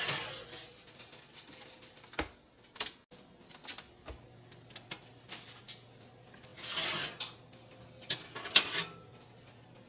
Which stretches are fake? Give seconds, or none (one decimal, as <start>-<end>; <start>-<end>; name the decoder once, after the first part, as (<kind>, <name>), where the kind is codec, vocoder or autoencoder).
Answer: none